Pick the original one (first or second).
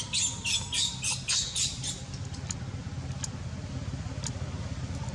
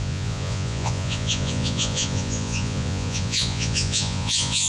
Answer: first